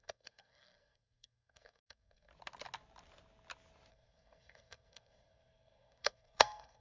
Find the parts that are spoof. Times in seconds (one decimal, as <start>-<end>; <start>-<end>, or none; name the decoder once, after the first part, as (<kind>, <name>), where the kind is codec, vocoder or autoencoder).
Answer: 0.0-2.3 (codec, SNAC); 3.9-6.8